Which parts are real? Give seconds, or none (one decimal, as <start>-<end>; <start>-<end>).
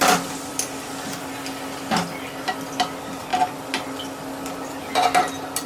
0.0-5.7